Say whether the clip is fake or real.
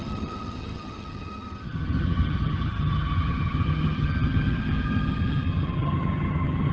fake